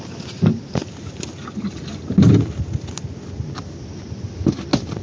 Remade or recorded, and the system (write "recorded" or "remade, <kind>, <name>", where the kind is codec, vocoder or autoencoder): recorded